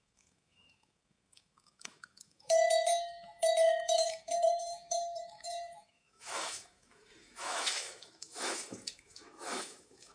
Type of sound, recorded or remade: remade